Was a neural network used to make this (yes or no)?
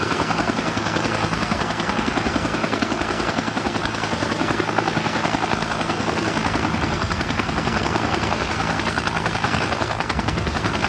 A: yes